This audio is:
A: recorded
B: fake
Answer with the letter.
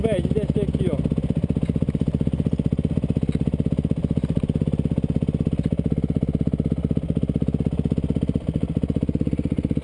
A